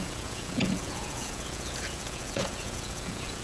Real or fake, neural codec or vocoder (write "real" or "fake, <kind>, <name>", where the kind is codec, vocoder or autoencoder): fake, vocoder, Vocos